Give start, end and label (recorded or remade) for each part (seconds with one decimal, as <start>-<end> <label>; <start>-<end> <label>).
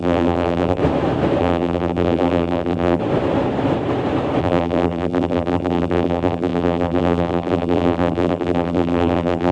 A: 0.0-0.8 remade; 0.8-1.4 recorded; 1.4-3.0 remade; 3.0-4.4 recorded; 4.4-9.5 remade